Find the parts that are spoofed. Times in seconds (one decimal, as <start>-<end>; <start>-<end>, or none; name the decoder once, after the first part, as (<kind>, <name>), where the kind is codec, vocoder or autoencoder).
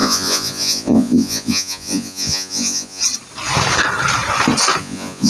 0.0-3.0 (vocoder, Vocos); 4.8-5.3